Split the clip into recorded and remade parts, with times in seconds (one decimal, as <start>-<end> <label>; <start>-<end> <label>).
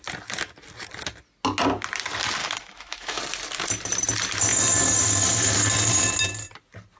0.0-2.4 recorded; 2.4-3.2 remade; 3.2-7.0 recorded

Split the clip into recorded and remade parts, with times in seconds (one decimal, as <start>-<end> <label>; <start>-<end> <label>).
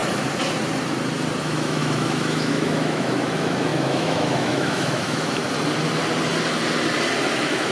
0.0-1.4 recorded; 1.4-5.4 remade; 5.4-7.3 recorded; 7.3-7.7 remade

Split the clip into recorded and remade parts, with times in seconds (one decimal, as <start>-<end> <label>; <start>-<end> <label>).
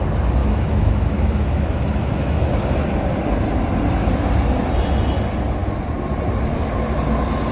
0.0-0.4 recorded; 0.4-2.5 remade; 2.5-7.5 recorded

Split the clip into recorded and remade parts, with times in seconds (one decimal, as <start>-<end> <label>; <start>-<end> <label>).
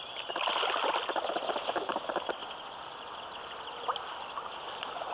0.0-5.1 recorded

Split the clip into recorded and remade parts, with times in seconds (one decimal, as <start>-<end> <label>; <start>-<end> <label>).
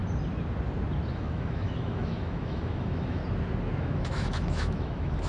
0.0-1.1 recorded; 1.1-3.2 remade; 3.2-3.8 recorded; 3.8-5.3 remade